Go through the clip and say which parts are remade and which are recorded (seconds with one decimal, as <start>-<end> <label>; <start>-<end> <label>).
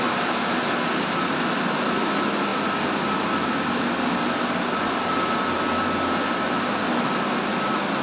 0.0-8.0 recorded